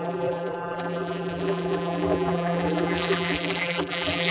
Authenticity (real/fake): fake